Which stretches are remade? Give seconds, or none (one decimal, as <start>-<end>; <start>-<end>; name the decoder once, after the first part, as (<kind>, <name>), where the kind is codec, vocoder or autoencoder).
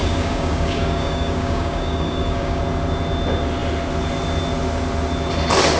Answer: 0.0-2.6 (codec, DAC)